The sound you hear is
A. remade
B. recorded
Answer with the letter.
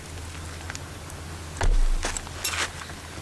B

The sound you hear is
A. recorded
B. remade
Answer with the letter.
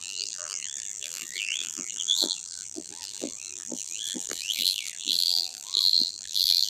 B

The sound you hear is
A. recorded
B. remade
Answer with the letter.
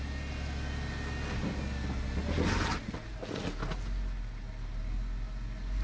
A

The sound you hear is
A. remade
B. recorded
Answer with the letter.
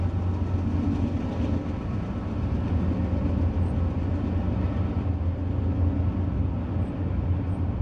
B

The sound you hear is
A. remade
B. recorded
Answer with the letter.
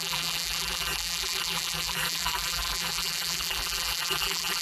A